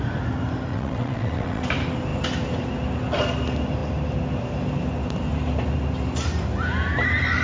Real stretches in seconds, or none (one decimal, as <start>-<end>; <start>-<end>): 0.0-0.7; 1.6-7.4